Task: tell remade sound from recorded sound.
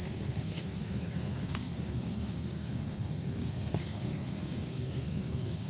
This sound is remade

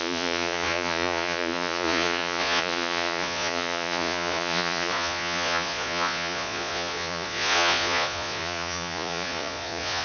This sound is remade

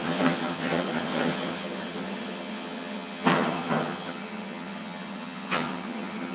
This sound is remade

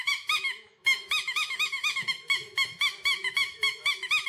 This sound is remade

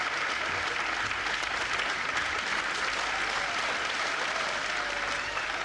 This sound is recorded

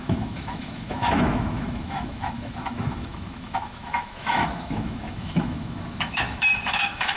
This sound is remade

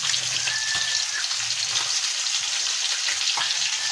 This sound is recorded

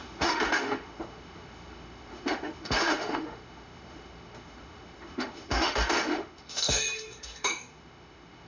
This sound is remade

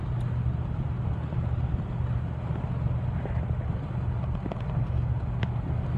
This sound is recorded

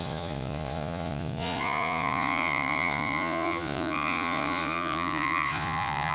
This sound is remade